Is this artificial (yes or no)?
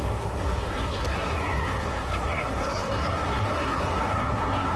yes